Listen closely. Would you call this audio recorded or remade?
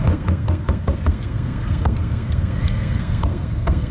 remade